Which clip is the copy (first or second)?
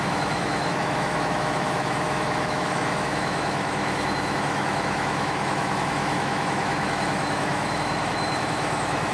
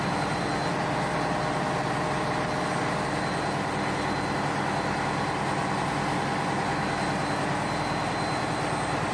first